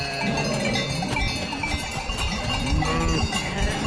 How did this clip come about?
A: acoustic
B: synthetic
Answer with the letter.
A